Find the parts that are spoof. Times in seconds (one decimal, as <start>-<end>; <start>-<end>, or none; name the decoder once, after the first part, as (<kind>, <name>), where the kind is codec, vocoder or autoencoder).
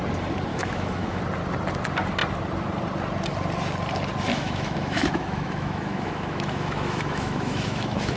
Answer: 0.5-1.2 (autoencoder, DAC-VAE); 4.3-8.2